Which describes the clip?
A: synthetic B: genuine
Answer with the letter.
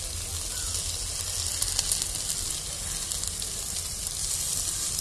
B